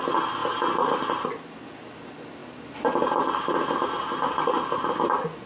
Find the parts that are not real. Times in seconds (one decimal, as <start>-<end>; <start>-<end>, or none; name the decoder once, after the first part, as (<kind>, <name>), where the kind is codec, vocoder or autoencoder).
none